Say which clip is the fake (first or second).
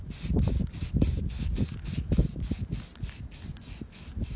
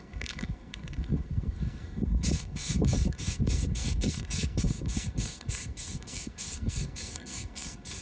second